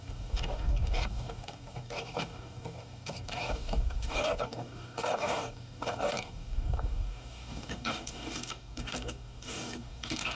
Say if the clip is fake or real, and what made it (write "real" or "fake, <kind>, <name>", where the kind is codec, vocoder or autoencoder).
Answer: fake, codec, DAC